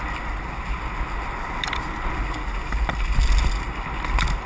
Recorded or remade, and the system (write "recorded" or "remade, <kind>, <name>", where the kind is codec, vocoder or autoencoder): recorded